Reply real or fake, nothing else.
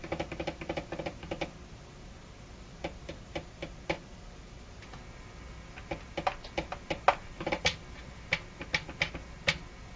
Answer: real